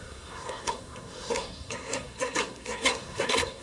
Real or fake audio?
fake